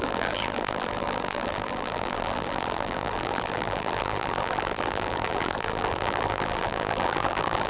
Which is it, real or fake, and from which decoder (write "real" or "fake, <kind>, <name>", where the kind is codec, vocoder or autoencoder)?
fake, vocoder, BigVGAN v2